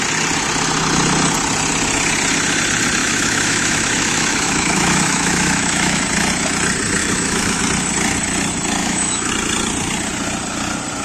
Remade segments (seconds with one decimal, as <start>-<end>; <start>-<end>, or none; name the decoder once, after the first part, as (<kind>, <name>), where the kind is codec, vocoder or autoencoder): 3.0-6.0 (autoencoder, DAC-VAE); 7.0-7.6; 8.8-9.3